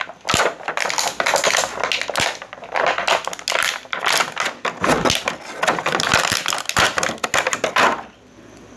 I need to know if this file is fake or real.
real